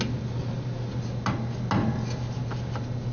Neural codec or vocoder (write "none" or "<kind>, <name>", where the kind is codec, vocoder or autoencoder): none